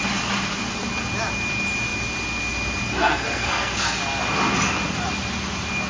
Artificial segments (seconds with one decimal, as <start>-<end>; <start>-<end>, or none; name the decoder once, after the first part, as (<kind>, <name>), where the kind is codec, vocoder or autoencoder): 2.9-4.0 (codec, SNAC)